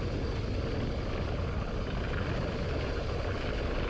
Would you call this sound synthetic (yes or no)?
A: no